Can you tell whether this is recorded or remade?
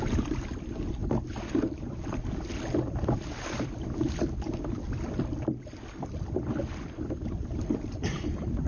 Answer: remade